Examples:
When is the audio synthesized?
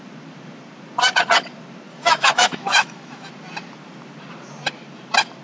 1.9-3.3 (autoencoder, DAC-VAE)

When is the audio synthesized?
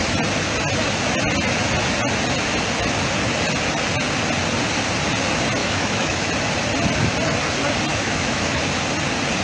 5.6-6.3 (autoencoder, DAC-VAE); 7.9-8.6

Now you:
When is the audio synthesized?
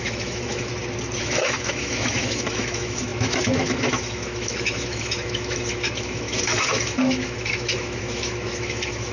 0.0-0.7 (autoencoder, DAC-VAE); 1.2-9.1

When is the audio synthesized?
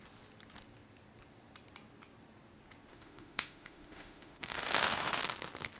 2.9-5.2 (autoencoder, DAC-VAE)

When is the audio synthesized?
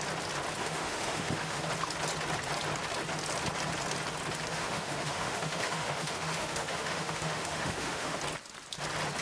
0.6-1.7 (autoencoder, DAC-VAE); 4.5-8.2